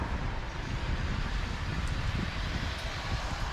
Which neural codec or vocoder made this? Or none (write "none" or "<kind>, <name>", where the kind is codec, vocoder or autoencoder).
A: vocoder, BigVGAN v2